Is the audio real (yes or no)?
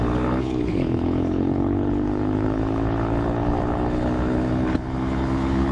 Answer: no